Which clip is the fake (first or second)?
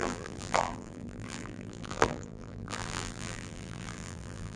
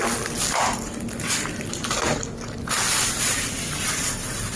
first